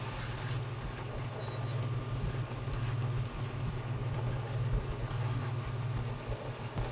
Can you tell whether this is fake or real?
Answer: real